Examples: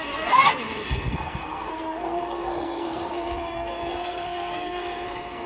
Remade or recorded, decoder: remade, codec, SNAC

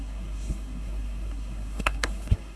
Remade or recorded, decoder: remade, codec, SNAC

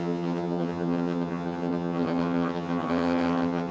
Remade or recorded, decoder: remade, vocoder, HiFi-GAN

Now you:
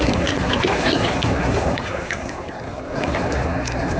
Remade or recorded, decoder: remade, codec, SNAC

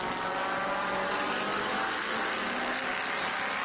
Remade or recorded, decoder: recorded